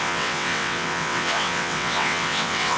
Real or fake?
fake